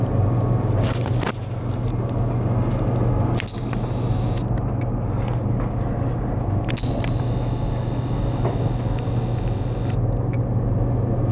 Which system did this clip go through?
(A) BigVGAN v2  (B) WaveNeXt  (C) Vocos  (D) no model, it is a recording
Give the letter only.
D